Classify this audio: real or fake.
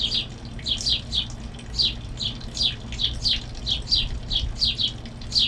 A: real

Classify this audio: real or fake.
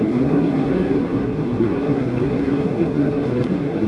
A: fake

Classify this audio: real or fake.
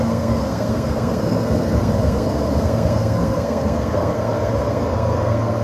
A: fake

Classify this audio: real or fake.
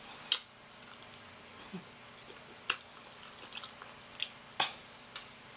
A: real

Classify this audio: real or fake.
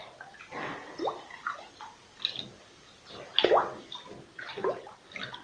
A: real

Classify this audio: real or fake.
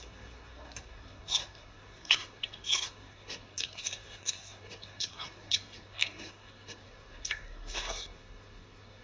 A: fake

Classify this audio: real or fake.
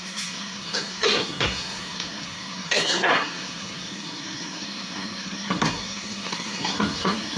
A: fake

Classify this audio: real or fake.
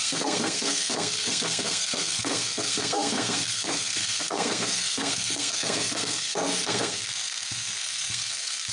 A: fake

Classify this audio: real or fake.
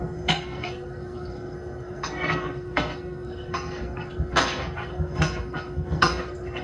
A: fake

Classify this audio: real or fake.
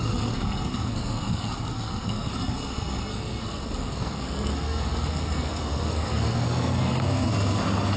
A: fake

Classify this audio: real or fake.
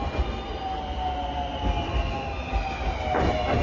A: real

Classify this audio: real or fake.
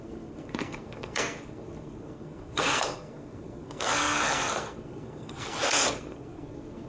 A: fake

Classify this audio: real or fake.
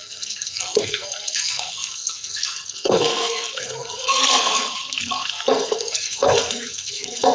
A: fake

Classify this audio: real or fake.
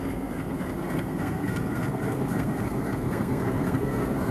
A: fake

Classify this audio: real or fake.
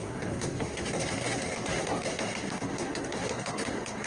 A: fake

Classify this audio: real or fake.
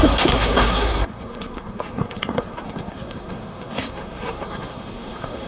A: fake